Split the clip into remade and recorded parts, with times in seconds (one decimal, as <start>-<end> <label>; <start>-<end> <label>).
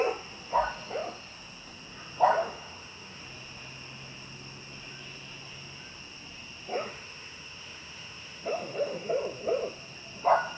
0.0-2.4 recorded; 2.4-3.2 remade; 3.2-6.7 recorded; 6.7-9.1 remade; 9.1-10.6 recorded